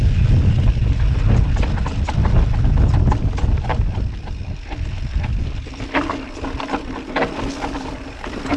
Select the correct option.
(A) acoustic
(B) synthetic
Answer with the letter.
A